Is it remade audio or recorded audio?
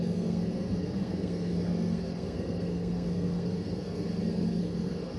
remade